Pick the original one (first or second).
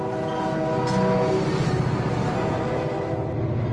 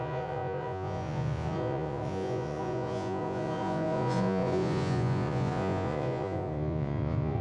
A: first